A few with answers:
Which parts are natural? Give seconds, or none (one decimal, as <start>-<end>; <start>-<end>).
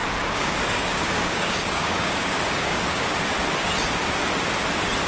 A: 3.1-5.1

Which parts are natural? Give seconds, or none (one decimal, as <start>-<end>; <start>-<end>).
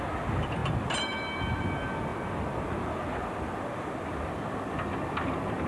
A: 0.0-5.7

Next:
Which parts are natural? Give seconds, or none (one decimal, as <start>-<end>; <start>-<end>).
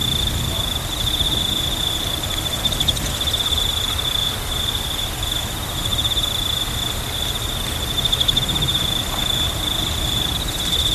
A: 0.0-10.9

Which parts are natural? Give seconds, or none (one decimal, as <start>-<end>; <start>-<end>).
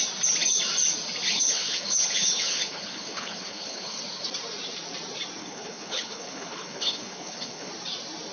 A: 0.0-1.3; 4.0-5.4; 7.7-8.3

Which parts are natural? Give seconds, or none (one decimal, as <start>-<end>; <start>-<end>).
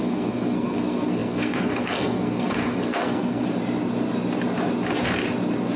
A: 3.4-5.8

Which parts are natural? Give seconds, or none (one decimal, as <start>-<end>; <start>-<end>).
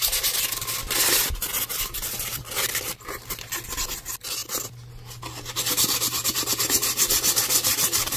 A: 0.0-8.2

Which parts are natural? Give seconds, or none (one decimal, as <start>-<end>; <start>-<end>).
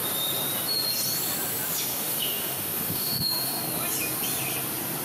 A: 0.0-1.9; 3.6-5.0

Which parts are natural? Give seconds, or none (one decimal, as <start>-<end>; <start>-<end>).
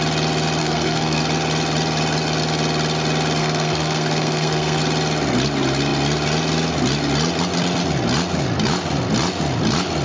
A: 0.0-0.6; 1.2-3.4; 4.8-10.0